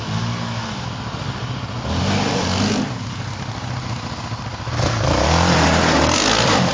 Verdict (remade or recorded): recorded